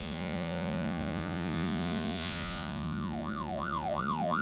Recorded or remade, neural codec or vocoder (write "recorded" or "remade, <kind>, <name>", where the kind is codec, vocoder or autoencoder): remade, vocoder, Vocos